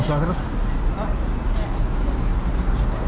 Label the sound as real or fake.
real